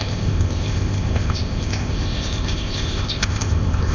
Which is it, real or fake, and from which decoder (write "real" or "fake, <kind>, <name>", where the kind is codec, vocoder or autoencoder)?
fake, codec, ZipCodec